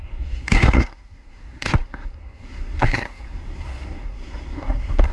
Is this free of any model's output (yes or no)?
no